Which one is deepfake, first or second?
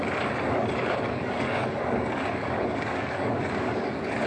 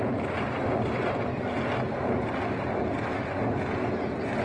first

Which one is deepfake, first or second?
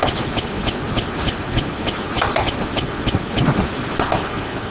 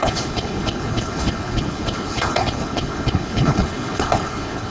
second